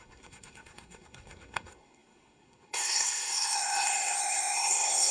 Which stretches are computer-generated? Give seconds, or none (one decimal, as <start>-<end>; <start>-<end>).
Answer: 0.0-5.1